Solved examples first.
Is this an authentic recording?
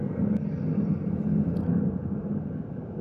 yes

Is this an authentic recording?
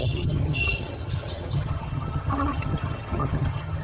no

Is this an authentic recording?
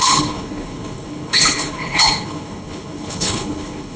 no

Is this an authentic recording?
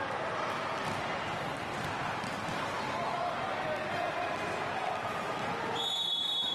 yes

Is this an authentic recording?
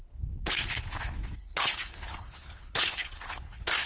no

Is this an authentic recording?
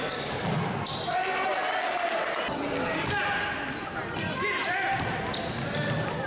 yes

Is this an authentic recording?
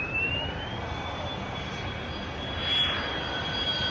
no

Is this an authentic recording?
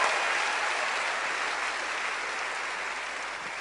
yes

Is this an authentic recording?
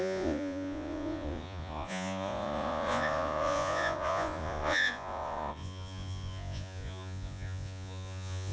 no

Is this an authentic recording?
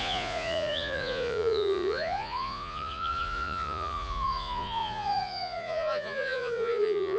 no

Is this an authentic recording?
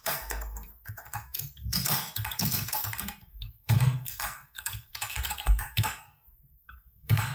no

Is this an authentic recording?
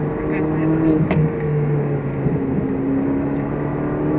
yes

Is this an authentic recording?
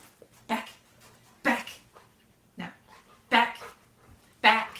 yes